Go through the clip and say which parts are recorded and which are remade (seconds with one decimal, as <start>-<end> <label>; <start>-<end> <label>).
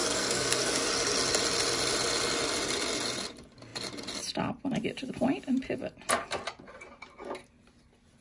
0.0-0.9 remade; 0.9-8.2 recorded